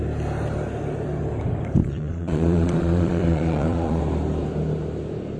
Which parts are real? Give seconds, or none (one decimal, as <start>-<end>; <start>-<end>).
0.0-1.8; 4.0-5.4